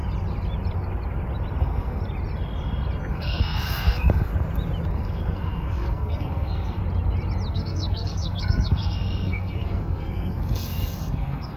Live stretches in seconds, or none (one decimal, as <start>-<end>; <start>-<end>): 0.0-1.6; 2.0-3.1; 4.3-4.9; 6.8-7.5